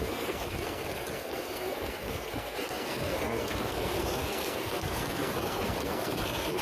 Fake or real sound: fake